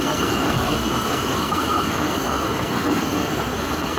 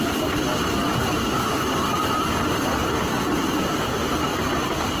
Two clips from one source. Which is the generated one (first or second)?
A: first